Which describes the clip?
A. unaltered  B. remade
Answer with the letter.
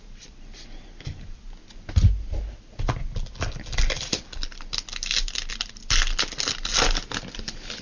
A